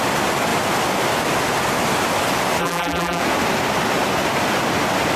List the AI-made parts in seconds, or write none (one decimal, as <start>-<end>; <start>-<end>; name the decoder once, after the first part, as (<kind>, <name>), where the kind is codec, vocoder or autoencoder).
2.6-3.2 (vocoder, BigVGAN v2)

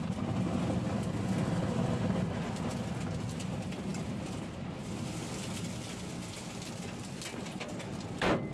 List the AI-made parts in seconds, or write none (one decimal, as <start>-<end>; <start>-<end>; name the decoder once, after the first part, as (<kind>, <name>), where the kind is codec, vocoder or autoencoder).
none